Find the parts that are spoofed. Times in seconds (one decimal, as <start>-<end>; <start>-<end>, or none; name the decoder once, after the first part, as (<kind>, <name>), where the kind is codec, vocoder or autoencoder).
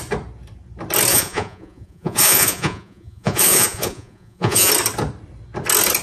1.1-4.7 (vocoder, Vocos)